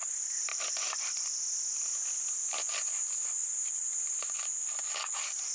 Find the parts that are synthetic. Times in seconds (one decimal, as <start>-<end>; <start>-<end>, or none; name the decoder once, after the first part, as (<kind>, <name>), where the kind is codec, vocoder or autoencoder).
3.4-4.7 (vocoder, BigVGAN v2)